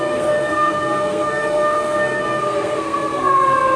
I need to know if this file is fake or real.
fake